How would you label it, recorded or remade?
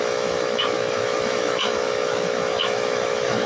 remade